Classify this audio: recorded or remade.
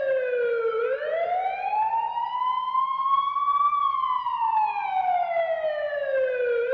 recorded